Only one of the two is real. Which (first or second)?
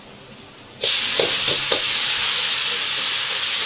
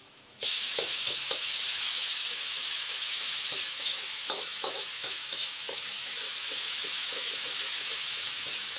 first